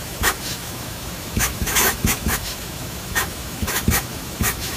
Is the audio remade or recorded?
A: remade